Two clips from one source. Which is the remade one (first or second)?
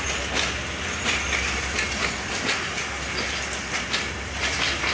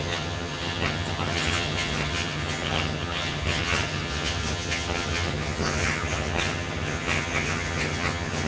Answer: second